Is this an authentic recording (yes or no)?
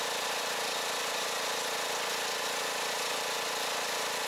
no